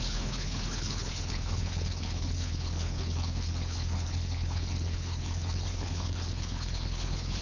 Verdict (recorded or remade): remade